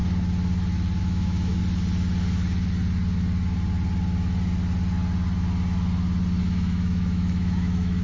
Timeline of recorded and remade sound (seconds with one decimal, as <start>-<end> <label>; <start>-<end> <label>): 0.0-1.0 recorded; 1.0-1.6 remade; 1.6-6.4 recorded; 6.4-8.0 remade